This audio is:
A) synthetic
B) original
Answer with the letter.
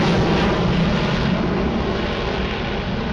B